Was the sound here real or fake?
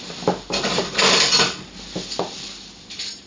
real